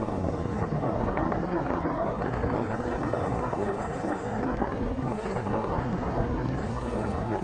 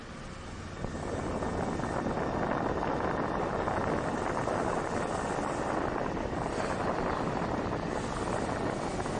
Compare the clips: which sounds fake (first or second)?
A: first